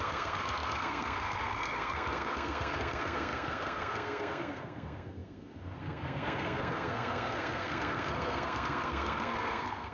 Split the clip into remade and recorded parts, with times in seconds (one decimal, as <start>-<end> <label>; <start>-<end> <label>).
0.0-9.9 remade